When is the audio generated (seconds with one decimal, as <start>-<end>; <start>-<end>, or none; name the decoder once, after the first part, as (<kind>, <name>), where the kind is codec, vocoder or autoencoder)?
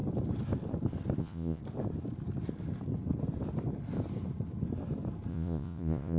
1.2-1.6 (vocoder, Vocos); 5.3-6.2